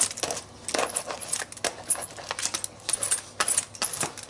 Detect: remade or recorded recorded